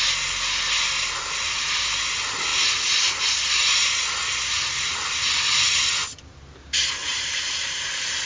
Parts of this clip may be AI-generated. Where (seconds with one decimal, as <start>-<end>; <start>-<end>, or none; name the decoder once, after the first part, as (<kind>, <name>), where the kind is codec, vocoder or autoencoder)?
7.0-7.9 (vocoder, BigVGAN v2)

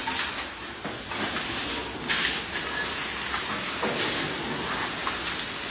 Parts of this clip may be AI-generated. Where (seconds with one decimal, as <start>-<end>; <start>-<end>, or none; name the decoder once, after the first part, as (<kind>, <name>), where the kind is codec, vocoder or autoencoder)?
none

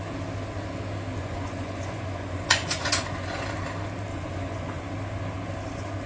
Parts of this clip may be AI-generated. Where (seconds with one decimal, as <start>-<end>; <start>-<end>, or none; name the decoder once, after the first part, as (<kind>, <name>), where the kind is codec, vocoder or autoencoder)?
1.2-3.4 (vocoder, Vocos); 4.1-4.8